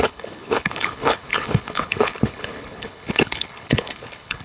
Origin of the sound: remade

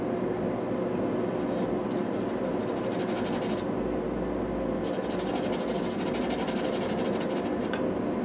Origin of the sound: recorded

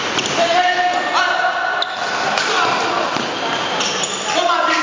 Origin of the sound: recorded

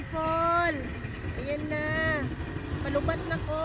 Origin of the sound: recorded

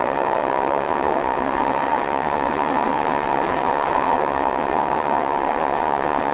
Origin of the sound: remade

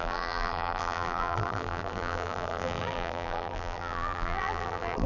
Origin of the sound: remade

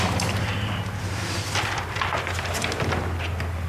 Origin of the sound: recorded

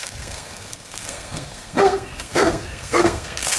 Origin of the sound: remade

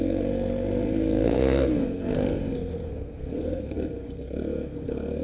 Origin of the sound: remade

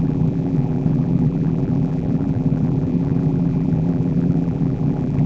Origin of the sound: remade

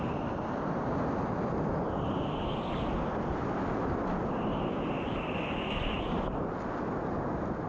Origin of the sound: recorded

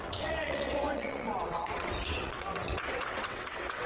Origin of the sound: remade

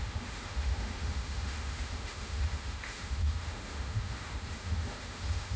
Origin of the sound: remade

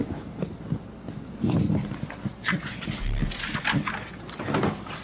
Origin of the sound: recorded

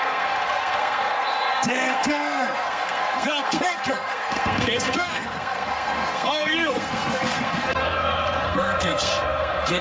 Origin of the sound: remade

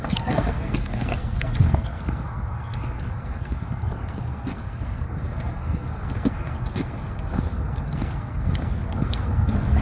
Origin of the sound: remade